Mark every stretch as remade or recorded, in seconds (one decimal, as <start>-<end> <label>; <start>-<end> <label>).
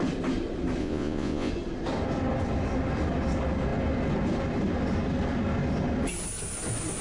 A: 0.0-0.8 recorded; 0.8-1.5 remade; 1.5-7.0 recorded